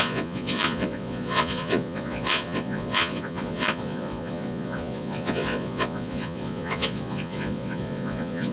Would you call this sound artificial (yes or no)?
yes